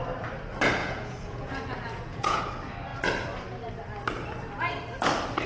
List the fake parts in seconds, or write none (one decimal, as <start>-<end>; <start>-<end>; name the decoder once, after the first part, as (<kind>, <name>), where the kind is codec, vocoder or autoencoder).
0.8-2.4 (vocoder, Vocos)